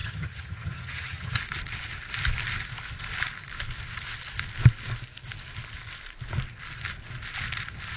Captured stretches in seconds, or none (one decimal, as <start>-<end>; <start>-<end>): 1.4-8.0